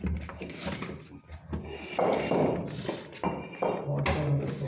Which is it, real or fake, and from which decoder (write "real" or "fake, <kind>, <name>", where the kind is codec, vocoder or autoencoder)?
real